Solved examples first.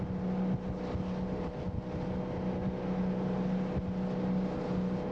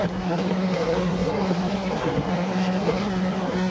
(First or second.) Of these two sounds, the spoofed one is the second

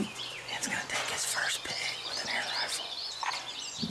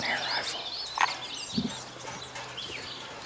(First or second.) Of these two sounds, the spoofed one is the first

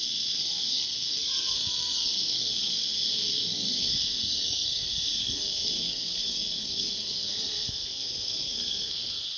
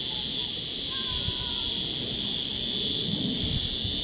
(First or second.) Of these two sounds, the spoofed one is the first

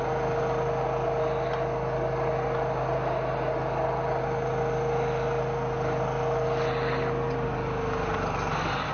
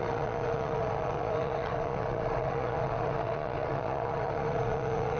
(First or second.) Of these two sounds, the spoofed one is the second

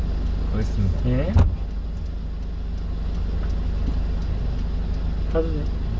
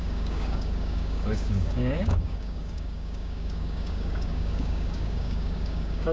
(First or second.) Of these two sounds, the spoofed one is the second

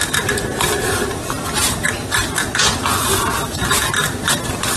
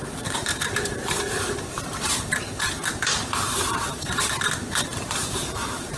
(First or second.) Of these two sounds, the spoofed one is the second